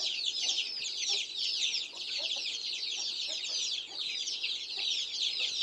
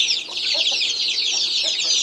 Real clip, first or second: second